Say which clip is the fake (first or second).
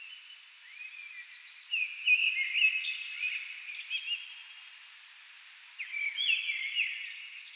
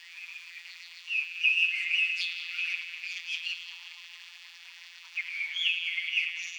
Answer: second